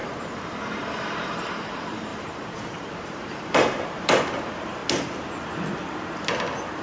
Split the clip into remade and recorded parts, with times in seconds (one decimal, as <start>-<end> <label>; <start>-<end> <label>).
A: 0.0-4.8 remade; 4.8-6.8 recorded